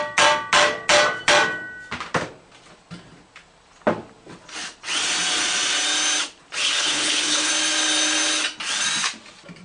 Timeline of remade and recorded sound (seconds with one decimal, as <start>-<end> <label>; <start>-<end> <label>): 0.0-6.6 recorded; 6.6-7.5 remade; 7.5-9.6 recorded